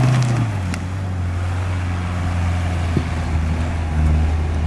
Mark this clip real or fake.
real